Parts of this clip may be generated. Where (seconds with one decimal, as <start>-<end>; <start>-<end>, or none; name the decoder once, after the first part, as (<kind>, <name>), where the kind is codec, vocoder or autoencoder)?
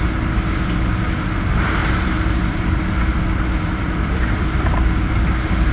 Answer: 1.8-5.2 (vocoder, BigVGAN v2)